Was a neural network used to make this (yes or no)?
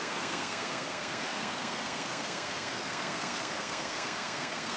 yes